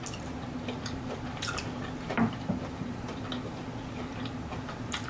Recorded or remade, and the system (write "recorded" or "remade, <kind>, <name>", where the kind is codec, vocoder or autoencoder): recorded